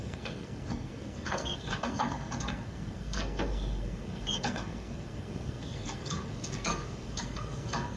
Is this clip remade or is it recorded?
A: remade